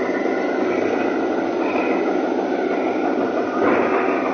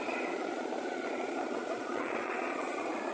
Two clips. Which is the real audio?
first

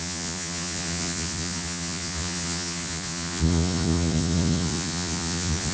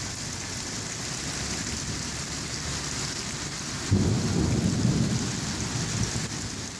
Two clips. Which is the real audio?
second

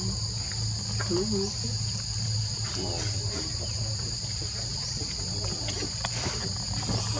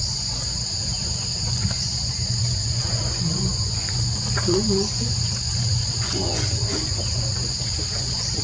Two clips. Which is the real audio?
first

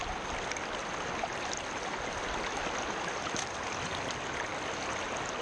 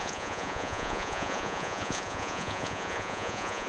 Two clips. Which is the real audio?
first